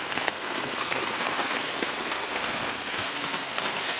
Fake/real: fake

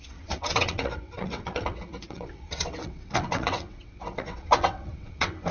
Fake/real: fake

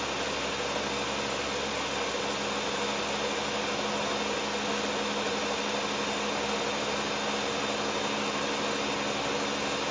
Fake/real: real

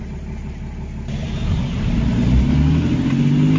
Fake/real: real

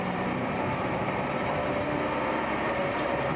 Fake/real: fake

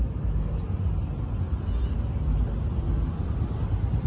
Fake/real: real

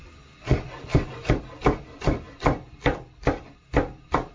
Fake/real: real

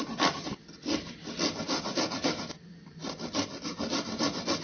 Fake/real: real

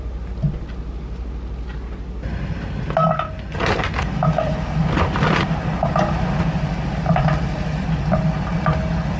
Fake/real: real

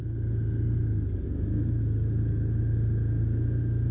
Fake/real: real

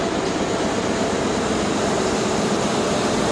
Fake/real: real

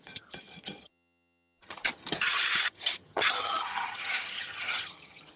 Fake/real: fake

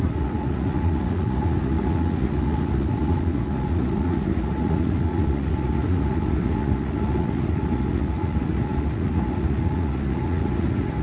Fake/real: fake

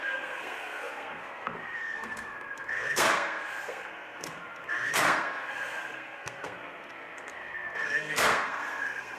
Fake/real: fake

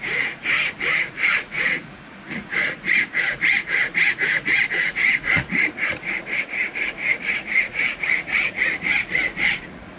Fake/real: fake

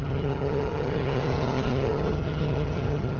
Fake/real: fake